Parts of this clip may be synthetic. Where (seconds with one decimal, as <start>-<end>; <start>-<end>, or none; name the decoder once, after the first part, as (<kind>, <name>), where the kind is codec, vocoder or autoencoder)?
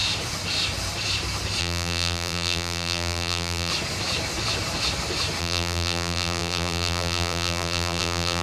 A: 1.6-3.7 (vocoder, BigVGAN v2); 5.4-8.4